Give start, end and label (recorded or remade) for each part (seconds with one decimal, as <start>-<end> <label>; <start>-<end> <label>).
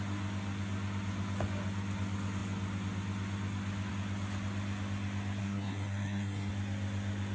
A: 0.0-5.4 recorded; 5.4-6.5 remade; 6.5-7.3 recorded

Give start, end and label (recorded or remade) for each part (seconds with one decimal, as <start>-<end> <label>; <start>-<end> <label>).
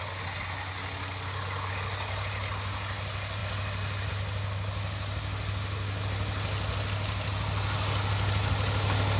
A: 0.0-9.2 recorded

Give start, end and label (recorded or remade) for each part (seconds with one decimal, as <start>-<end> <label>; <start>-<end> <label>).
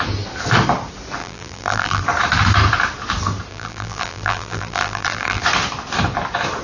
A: 0.0-1.2 recorded; 1.2-2.0 remade; 2.0-3.5 recorded; 3.5-5.4 remade; 5.4-6.6 recorded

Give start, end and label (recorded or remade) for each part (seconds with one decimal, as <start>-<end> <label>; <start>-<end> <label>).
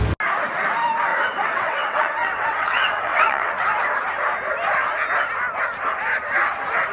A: 0.0-1.1 recorded; 1.1-3.5 remade; 3.5-6.9 recorded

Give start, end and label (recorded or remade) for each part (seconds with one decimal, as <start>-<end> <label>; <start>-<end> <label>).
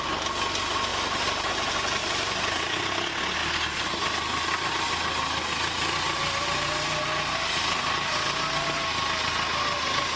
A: 0.0-0.9 recorded; 0.9-1.5 remade; 1.5-2.0 recorded; 2.0-3.0 remade; 3.0-10.2 recorded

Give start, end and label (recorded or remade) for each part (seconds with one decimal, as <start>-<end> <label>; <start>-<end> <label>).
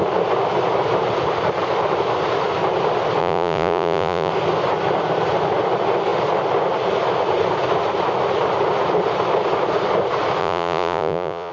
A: 0.0-3.2 recorded; 3.2-4.3 remade; 4.3-10.4 recorded; 10.4-11.5 remade